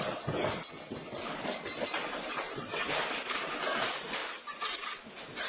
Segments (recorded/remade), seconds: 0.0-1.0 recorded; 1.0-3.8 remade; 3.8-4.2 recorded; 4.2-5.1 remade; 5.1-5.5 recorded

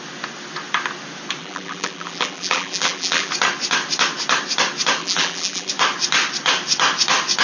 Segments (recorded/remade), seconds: 0.0-1.4 recorded; 1.4-3.3 remade; 3.3-5.0 recorded; 5.0-5.7 remade; 5.7-7.4 recorded

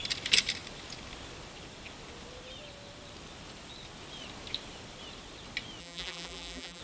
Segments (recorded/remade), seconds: 0.0-5.8 recorded; 5.8-6.8 remade

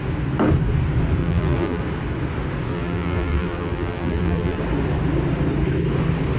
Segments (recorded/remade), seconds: 0.0-1.2 recorded; 1.2-1.8 remade; 1.8-2.7 recorded; 2.7-4.6 remade; 4.6-6.4 recorded